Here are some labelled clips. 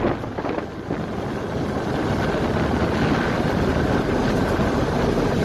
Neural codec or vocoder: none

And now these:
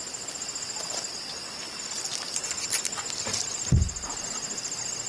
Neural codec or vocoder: none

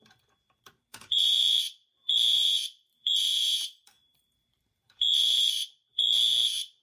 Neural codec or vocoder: vocoder, BigVGAN v2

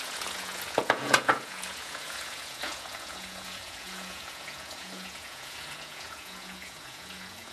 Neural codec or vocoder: vocoder, Vocos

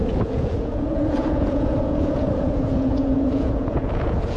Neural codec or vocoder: vocoder, Vocos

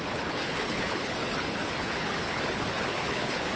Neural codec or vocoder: codec, HILCodec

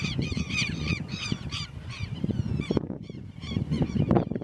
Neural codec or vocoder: vocoder, Vocos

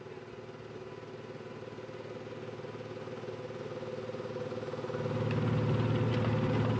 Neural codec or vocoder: none